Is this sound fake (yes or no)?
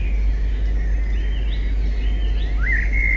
no